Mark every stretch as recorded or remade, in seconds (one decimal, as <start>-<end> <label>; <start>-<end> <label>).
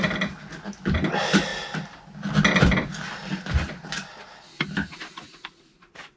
0.0-6.2 recorded